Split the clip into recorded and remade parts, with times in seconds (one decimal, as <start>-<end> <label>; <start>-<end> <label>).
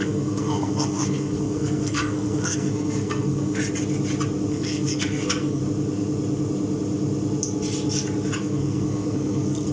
0.0-3.6 remade; 3.6-4.5 recorded; 4.5-5.6 remade; 5.6-8.4 recorded; 8.4-9.7 remade